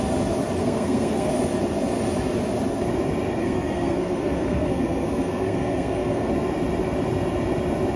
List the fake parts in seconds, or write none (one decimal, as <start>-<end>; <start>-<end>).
0.6-1.3; 3.4-6.3